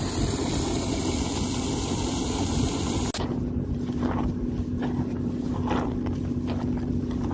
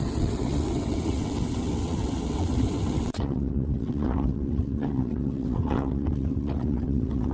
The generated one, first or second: second